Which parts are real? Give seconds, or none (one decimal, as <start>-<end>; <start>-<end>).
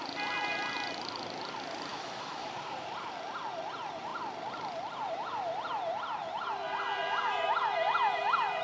0.0-1.9; 2.5-8.6